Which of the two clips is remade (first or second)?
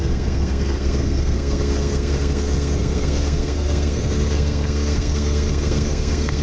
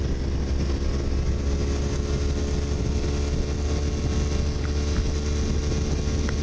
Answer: first